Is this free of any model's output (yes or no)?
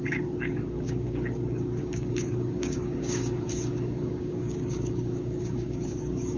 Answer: no